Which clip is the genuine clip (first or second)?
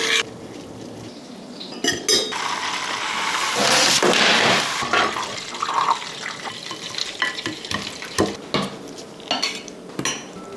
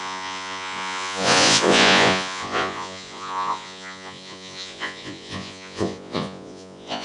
first